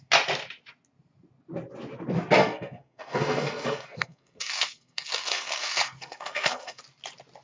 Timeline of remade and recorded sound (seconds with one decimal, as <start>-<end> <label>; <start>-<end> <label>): 0.0-2.4 recorded; 2.4-6.8 remade; 6.8-7.4 recorded